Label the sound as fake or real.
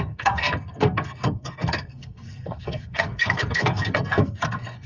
fake